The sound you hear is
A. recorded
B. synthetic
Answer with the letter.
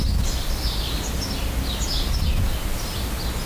A